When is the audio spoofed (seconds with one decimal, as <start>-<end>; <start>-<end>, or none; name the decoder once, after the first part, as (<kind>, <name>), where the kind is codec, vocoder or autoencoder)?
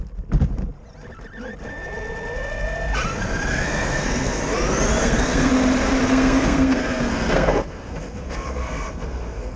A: 3.5-4.4 (codec, SNAC); 5.0-5.5; 6.0-9.6